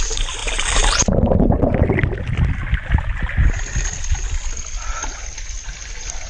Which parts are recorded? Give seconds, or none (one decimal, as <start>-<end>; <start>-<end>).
0.0-6.3